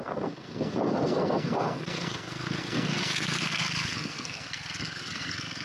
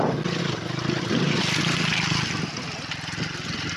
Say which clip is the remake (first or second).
first